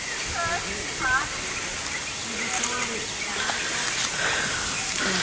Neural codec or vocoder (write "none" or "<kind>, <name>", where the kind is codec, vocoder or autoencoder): none